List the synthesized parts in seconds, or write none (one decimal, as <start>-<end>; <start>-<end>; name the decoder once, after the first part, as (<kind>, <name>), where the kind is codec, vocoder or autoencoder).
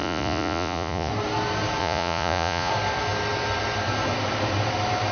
0.0-1.1 (vocoder, Vocos); 1.8-2.7